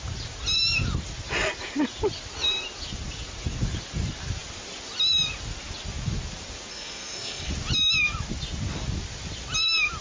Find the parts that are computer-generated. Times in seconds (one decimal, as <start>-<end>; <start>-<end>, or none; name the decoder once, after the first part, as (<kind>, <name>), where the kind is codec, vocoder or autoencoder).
6.7-7.5 (codec, SNAC)